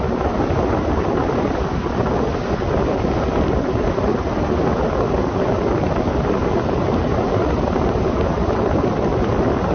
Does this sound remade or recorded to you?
recorded